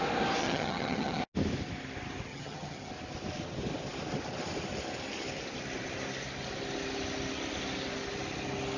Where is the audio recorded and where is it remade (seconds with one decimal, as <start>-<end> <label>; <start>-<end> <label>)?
0.0-0.4 recorded; 0.4-1.2 remade; 1.2-2.3 recorded; 2.3-2.9 remade; 2.9-8.8 recorded